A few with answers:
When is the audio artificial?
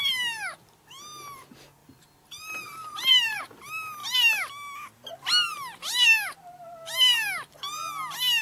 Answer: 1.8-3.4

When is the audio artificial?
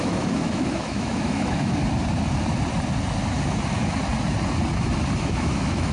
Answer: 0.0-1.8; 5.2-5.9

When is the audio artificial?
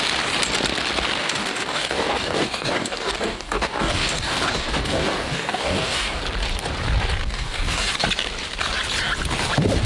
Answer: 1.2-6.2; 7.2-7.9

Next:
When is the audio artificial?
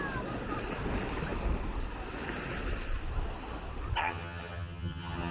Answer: 4.0-5.3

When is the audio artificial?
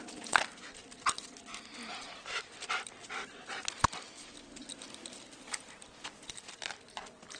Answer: none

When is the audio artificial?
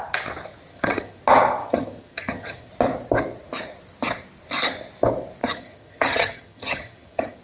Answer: 0.7-1.2; 1.6-2.7; 5.4-7.4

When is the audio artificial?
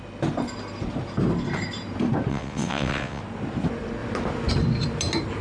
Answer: 2.3-3.2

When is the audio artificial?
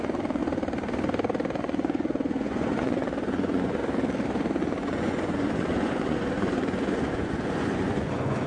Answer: 0.0-0.4; 1.6-3.8; 4.6-8.5